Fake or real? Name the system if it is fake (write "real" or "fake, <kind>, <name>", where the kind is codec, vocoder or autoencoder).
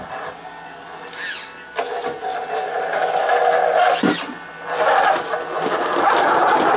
real